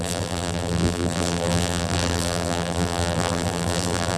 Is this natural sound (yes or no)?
no